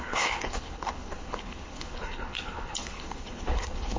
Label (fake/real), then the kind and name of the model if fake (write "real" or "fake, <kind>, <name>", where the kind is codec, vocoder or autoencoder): fake, codec, HILCodec